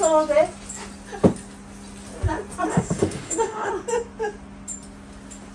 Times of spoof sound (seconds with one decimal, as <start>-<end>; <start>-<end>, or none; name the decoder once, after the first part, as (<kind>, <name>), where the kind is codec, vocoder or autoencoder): 2.7-3.7 (autoencoder, DAC-VAE)